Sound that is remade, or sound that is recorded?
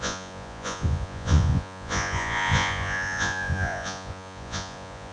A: remade